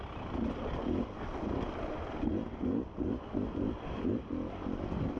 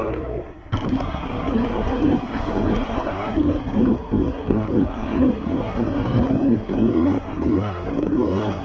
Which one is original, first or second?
first